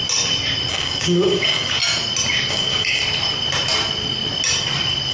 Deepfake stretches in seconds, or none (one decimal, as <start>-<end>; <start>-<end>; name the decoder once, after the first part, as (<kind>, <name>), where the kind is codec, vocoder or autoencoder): 0.7-1.8 (codec, DAC); 2.5-3.0